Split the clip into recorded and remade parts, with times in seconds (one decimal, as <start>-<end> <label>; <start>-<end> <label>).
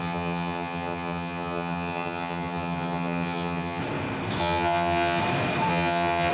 0.0-3.8 remade; 3.8-4.4 recorded; 4.4-5.2 remade; 5.2-5.7 recorded; 5.7-6.3 remade